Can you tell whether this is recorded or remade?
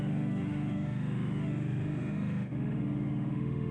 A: remade